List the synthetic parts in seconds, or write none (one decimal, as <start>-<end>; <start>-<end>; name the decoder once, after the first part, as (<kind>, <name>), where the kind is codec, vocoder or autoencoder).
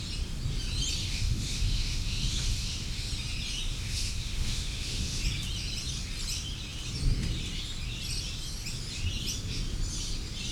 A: 1.0-3.1 (autoencoder, DAC-VAE); 3.7-5.2